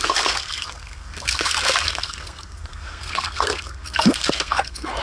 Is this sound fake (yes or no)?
yes